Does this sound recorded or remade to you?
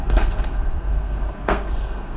remade